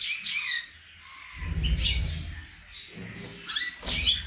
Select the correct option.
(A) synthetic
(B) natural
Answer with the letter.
B